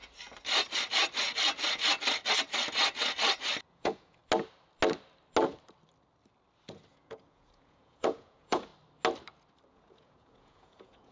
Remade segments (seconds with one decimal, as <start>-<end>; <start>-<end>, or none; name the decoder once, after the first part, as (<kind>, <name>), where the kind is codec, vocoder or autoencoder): 3.7-4.2 (vocoder, Vocos); 6.9-8.7; 9.7-11.1